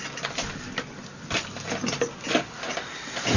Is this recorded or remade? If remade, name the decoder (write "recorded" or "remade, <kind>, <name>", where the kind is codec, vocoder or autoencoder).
recorded